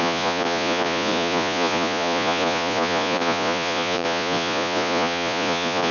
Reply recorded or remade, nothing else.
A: remade